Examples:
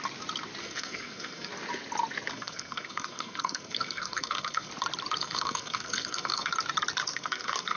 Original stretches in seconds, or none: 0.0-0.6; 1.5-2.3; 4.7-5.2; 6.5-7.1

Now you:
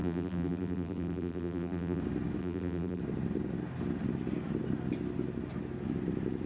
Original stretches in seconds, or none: 2.0-2.4; 3.0-6.5

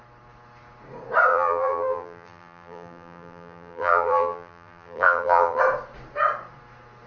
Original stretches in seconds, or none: 0.0-1.3; 5.6-7.1

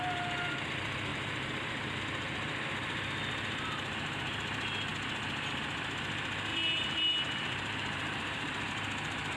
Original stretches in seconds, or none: 0.0-1.1; 2.0-6.5; 8.7-9.4

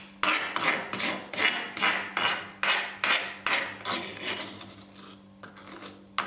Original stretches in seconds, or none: 0.0-6.3